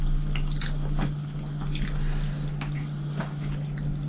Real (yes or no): yes